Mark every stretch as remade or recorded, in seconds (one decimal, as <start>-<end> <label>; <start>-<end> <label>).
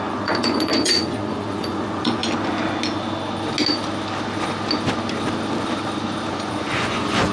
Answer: 0.0-2.2 remade; 2.2-6.3 recorded; 6.3-7.3 remade